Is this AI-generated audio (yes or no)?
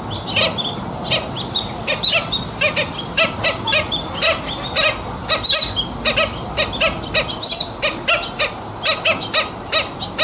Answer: no